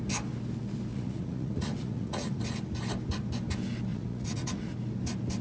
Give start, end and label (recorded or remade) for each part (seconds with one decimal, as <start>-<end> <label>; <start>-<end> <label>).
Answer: 0.0-0.9 recorded; 0.9-2.4 remade; 2.4-3.9 recorded; 3.9-4.7 remade; 4.7-5.4 recorded